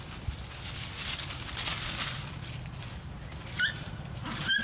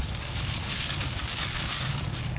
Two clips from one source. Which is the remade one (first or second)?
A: second